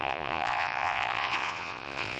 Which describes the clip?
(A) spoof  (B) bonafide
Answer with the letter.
A